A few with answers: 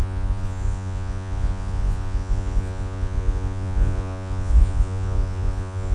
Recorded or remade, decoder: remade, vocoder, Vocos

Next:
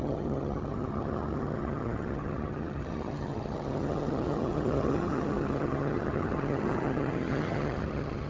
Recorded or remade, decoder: remade, vocoder, HiFi-GAN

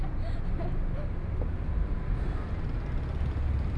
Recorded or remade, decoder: recorded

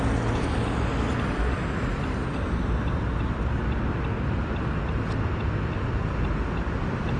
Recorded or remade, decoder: recorded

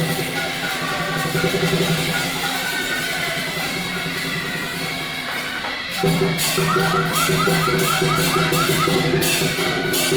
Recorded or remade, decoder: remade, vocoder, BigVGAN v2